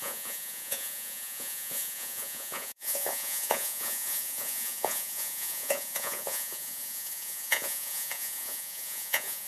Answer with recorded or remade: remade